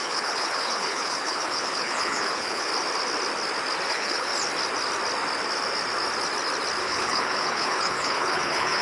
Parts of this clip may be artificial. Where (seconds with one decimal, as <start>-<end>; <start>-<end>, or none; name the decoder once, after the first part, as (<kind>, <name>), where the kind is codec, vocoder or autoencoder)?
0.0-2.7 (codec, HILCodec); 3.9-4.3; 6.8-8.8